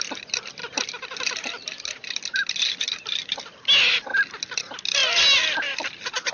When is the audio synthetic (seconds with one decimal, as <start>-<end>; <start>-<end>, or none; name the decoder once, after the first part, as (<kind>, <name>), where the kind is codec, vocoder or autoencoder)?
none